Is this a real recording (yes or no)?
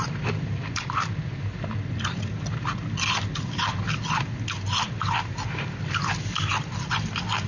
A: yes